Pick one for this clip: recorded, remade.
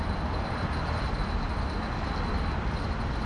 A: recorded